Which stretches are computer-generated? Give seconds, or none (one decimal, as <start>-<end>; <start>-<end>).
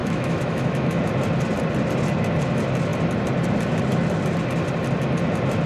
0.0-1.0